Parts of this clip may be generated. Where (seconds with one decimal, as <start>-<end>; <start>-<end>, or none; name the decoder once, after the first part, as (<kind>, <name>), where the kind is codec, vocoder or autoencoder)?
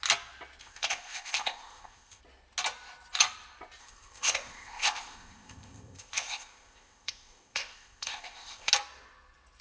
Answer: 0.6-2.2 (codec, ZipCodec); 3.8-8.7